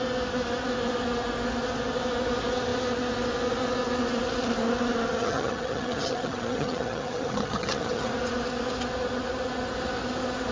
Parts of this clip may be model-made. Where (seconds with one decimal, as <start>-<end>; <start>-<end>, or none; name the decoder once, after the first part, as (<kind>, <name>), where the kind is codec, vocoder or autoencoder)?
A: 5.2-8.1 (vocoder, HiFi-GAN)